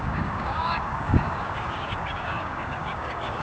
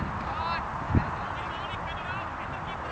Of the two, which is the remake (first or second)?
first